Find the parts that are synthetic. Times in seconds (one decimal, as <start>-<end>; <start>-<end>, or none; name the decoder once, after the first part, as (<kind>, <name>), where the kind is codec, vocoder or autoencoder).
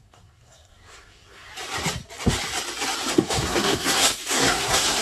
0.0-1.5 (codec, SNAC); 3.1-5.0